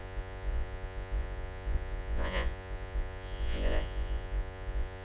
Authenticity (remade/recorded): remade